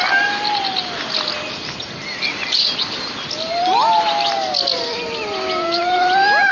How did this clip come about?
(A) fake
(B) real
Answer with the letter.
B